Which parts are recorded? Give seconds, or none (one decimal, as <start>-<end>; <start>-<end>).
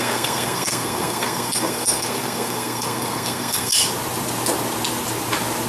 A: 3.7-5.7